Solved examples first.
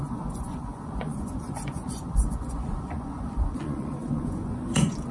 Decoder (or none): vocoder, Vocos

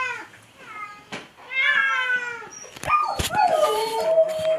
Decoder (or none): none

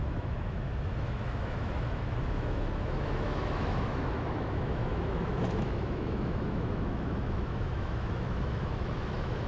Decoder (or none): autoencoder, DAC-VAE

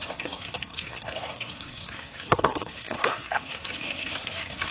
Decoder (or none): codec, SNAC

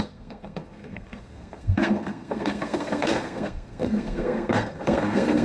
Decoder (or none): codec, SNAC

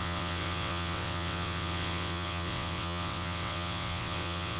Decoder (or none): vocoder, WaveNeXt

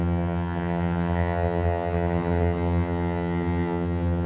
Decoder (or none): vocoder, HiFi-GAN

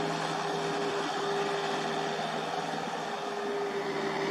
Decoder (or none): none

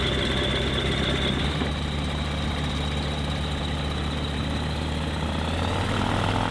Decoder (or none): none